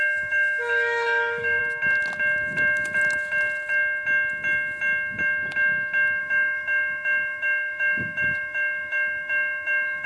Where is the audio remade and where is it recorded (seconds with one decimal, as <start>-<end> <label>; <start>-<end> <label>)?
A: 0.0-1.6 remade; 1.6-6.2 recorded; 6.2-10.1 remade